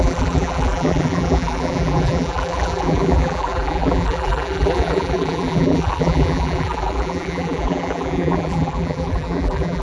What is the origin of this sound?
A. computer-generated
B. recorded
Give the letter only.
A